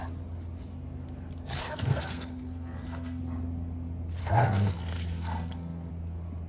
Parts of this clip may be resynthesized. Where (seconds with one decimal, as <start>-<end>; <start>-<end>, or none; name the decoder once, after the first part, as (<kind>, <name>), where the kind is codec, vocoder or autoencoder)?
1.6-3.2 (codec, SNAC); 4.2-5.9